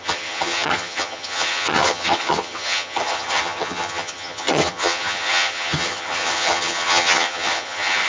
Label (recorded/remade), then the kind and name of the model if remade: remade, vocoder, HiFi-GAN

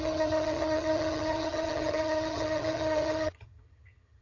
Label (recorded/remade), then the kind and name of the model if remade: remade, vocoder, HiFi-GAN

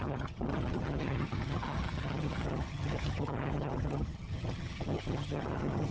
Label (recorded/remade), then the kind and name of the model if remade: remade, vocoder, HiFi-GAN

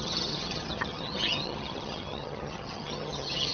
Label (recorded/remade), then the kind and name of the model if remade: remade, vocoder, HiFi-GAN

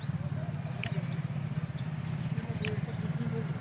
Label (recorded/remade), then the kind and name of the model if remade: recorded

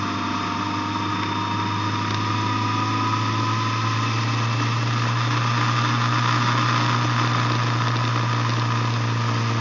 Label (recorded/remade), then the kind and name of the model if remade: recorded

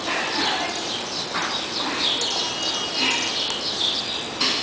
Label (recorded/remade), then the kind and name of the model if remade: recorded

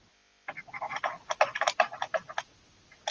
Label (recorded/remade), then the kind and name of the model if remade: recorded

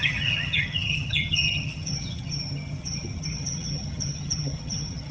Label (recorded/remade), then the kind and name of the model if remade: remade, vocoder, HiFi-GAN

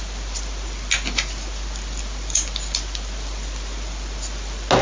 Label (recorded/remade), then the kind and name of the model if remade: recorded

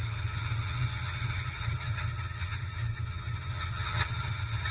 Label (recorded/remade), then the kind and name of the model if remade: remade, vocoder, HiFi-GAN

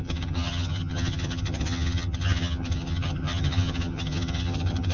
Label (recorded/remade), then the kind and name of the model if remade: remade, vocoder, HiFi-GAN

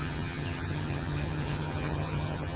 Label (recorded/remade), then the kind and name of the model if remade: remade, vocoder, HiFi-GAN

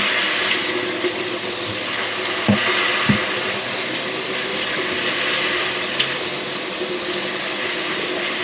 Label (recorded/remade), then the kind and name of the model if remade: recorded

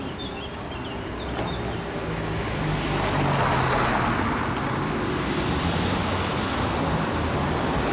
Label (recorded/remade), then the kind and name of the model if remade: recorded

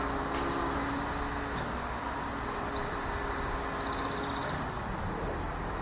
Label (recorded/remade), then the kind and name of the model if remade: recorded